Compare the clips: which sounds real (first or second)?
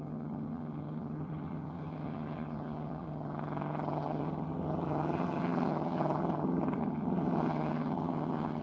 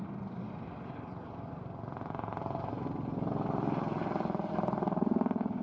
second